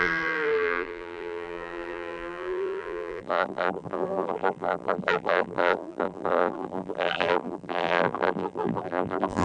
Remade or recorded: remade